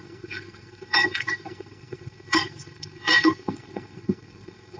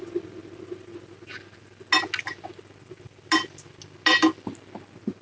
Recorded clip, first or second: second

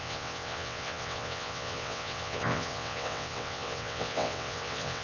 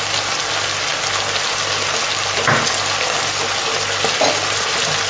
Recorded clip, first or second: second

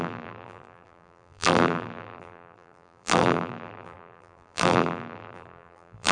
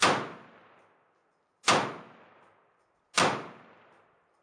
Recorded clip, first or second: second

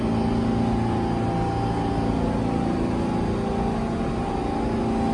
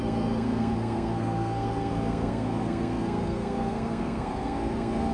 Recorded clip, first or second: first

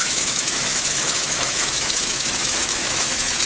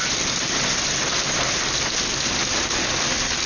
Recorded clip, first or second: second